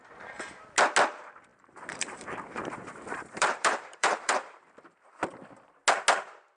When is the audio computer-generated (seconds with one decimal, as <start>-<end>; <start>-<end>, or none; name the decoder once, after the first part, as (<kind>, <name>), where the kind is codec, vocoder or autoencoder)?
1.5-4.3 (vocoder, BigVGAN v2)